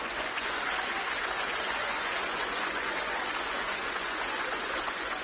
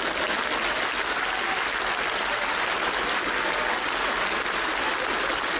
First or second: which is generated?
first